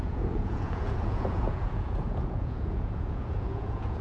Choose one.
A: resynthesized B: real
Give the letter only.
A